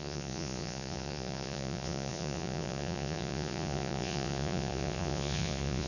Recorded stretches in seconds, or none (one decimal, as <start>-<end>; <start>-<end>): none